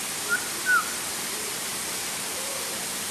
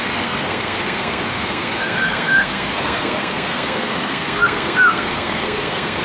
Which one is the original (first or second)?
first